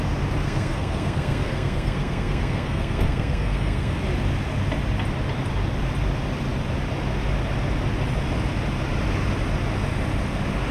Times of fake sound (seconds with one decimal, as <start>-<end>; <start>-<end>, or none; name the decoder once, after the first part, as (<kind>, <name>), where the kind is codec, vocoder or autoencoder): 0.4-4.0 (codec, SNAC)